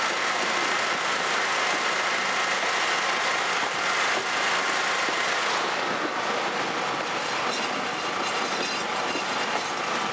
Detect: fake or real real